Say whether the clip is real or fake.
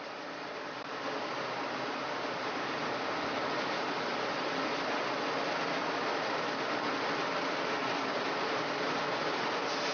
real